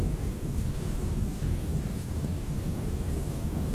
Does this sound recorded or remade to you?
remade